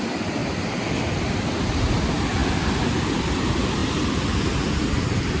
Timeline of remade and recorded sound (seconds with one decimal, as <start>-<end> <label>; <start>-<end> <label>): 0.0-5.4 recorded